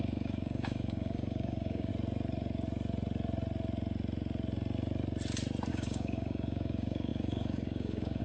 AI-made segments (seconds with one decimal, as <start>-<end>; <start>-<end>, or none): 0.0-1.9; 5.7-8.2